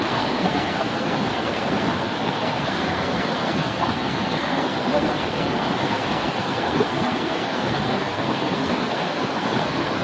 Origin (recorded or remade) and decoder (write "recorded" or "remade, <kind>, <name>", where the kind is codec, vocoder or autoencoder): remade, codec, SNAC